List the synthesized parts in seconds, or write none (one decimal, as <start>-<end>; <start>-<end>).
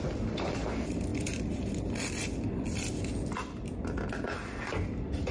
none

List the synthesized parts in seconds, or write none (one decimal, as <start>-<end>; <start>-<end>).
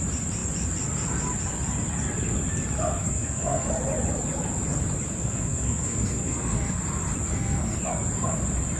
3.0-3.7; 5.2-6.8; 7.3-7.8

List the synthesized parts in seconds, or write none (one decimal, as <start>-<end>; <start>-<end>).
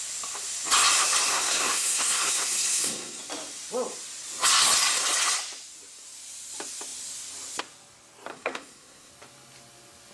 1.3-3.2; 8.3-9.1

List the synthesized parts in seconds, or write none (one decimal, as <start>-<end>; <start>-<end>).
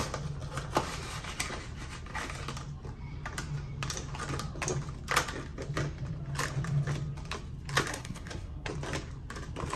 7.9-8.7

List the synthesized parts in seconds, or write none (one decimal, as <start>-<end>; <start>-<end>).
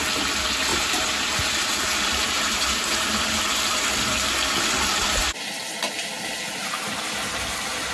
0.7-3.1; 5.0-5.6; 6.6-7.9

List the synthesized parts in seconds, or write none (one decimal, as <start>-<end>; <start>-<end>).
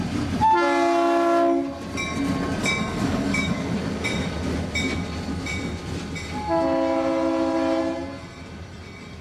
2.6-3.7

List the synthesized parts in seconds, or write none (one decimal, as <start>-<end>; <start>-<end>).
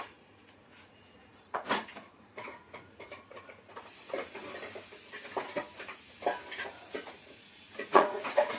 0.0-4.4; 6.6-8.6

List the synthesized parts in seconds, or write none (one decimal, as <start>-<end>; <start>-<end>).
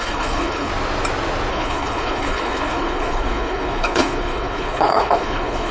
0.0-0.7; 1.5-5.7